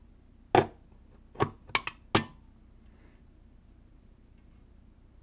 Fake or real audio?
real